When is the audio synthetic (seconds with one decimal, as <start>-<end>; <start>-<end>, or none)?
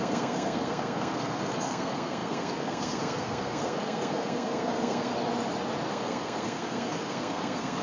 0.0-5.1; 5.9-7.8